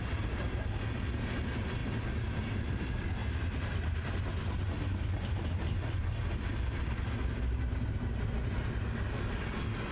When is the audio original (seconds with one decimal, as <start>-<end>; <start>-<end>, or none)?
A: 0.0-9.9